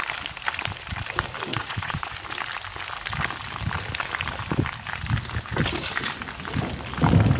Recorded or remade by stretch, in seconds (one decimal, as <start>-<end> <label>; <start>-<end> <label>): 0.0-1.5 recorded; 1.5-2.1 remade; 2.1-7.4 recorded